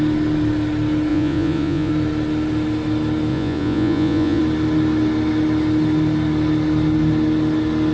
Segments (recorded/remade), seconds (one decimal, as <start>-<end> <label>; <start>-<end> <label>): 0.0-1.1 recorded; 1.1-1.9 remade; 1.9-3.3 recorded; 3.3-4.4 remade; 4.4-7.9 recorded